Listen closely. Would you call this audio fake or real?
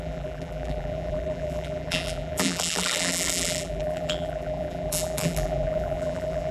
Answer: fake